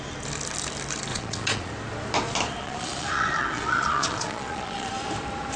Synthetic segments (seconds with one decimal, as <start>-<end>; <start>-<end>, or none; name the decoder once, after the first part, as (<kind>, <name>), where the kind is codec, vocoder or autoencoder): 1.1-1.7 (vocoder, Vocos); 2.6-4.9